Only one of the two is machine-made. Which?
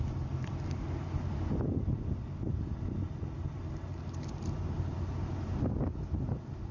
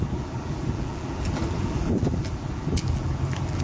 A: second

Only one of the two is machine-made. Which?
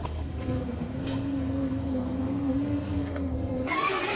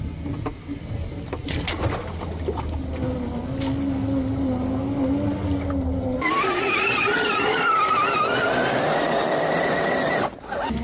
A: first